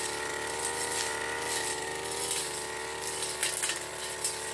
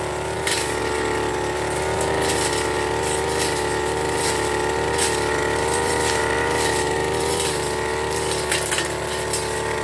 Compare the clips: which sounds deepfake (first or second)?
second